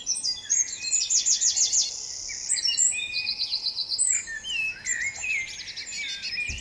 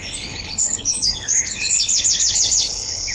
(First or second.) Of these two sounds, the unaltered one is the first